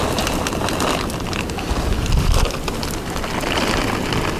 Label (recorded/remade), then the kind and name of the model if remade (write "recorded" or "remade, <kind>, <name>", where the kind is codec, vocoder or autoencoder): recorded